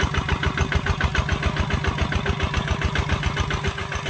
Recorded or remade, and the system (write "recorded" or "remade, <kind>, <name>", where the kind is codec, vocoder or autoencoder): recorded